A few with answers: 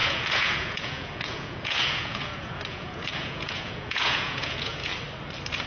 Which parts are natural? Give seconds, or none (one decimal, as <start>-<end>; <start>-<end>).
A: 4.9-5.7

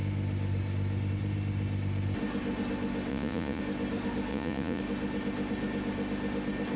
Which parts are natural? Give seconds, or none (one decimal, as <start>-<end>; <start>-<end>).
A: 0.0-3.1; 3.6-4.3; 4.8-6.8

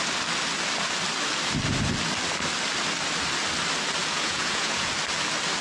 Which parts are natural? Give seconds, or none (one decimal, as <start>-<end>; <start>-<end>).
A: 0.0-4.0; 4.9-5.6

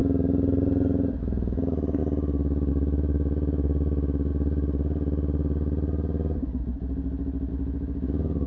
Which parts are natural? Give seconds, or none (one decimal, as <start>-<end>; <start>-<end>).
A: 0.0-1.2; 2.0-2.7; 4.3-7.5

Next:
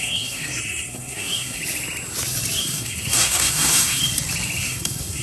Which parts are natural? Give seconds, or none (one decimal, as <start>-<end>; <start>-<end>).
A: 1.6-2.6; 4.0-4.6